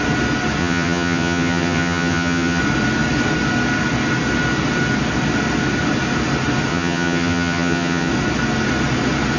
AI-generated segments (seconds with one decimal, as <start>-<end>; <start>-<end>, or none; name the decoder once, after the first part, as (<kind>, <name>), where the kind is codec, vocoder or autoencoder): 0.6-2.6 (vocoder, HiFi-GAN); 6.7-8.1